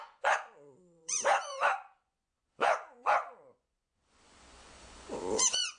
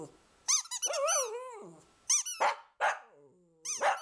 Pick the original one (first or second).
second